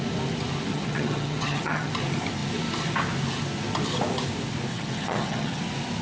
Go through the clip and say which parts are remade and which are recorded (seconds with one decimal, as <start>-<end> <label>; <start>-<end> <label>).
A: 0.0-0.7 recorded; 0.7-1.9 remade; 1.9-4.7 recorded; 4.7-5.6 remade; 5.6-6.0 recorded